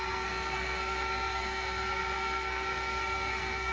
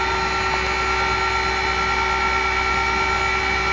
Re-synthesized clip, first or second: first